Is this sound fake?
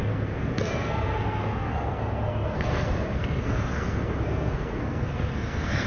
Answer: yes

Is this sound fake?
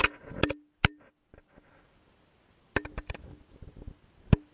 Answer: no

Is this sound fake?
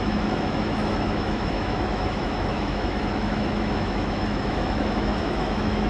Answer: yes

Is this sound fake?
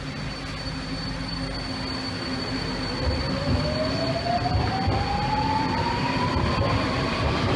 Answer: no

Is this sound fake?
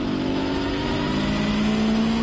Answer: no